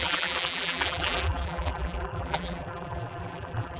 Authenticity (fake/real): fake